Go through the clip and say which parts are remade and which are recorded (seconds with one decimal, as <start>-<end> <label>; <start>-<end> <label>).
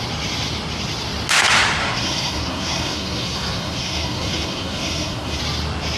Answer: 0.0-1.8 recorded; 1.8-5.4 remade; 5.4-6.0 recorded